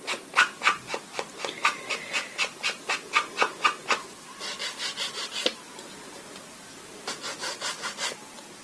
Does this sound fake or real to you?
real